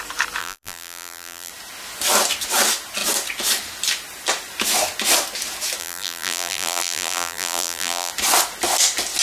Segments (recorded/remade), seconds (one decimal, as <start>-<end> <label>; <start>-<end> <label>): 0.0-0.4 recorded; 0.4-1.5 remade; 1.5-5.8 recorded; 5.8-8.1 remade; 8.1-9.2 recorded